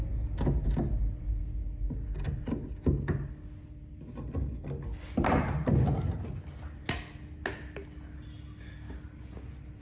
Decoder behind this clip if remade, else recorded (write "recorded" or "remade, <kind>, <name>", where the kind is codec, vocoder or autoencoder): recorded